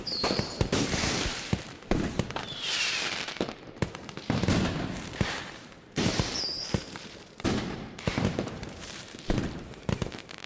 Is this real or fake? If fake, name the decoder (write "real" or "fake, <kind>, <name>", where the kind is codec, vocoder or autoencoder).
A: fake, vocoder, BigVGAN v2